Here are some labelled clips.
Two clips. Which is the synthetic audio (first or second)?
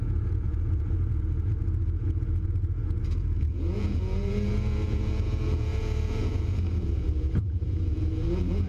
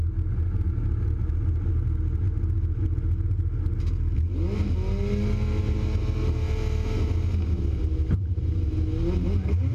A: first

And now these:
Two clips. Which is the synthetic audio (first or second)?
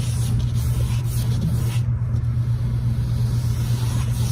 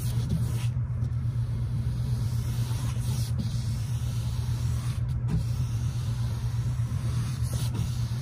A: second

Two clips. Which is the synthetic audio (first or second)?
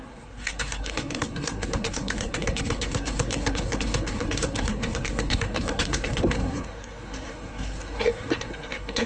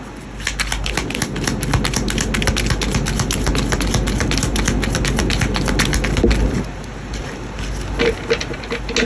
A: first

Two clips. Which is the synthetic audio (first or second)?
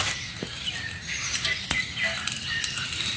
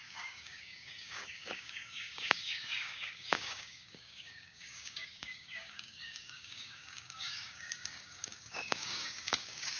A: second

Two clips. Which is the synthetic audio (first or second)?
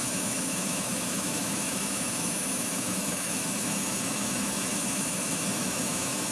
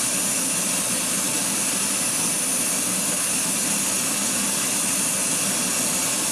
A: first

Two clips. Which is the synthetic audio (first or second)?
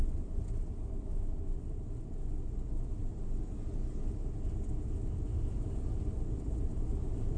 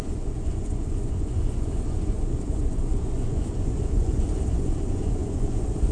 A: second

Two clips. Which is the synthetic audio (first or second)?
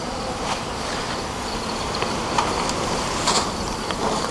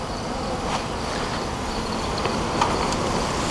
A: first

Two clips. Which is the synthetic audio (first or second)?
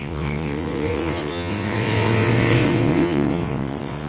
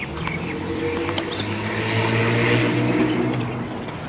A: first